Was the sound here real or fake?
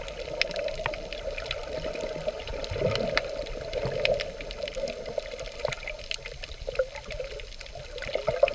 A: real